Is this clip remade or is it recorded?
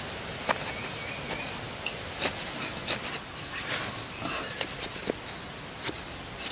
recorded